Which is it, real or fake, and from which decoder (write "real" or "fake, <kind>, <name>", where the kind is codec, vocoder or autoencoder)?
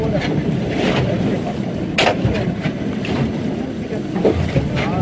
real